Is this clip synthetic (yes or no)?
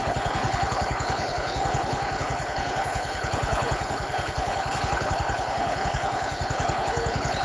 yes